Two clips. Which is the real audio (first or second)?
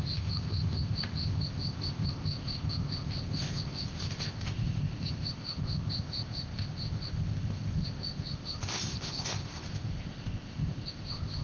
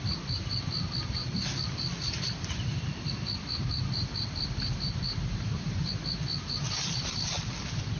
second